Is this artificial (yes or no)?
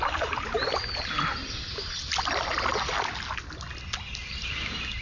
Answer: no